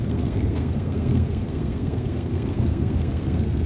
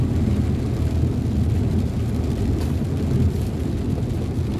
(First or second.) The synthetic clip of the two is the first